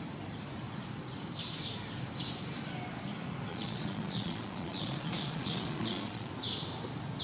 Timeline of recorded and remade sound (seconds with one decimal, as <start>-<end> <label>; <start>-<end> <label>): 0.0-3.5 recorded; 3.5-6.3 remade; 6.3-7.2 recorded